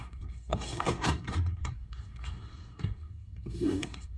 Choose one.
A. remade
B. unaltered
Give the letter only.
A